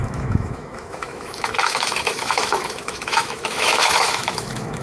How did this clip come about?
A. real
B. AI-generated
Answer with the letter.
B